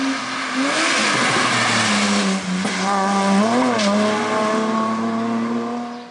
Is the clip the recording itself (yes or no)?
yes